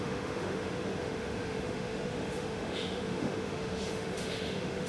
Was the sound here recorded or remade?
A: remade